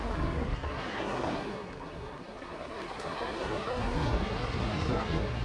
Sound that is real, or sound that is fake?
fake